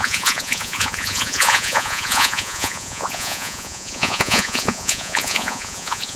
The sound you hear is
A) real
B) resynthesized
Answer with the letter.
B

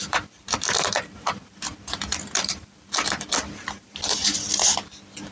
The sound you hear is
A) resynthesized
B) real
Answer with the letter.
A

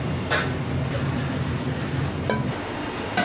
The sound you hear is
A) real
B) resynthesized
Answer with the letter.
A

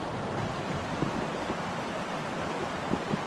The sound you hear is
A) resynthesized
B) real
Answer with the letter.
B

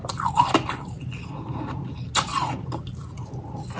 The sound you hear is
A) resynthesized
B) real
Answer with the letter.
B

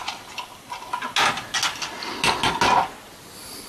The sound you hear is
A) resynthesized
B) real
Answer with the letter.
B